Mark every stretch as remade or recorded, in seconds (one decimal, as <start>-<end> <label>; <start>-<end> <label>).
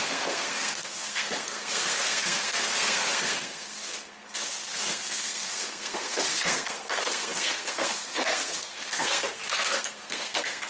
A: 0.0-10.7 remade